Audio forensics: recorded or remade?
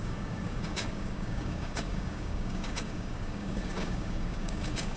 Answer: remade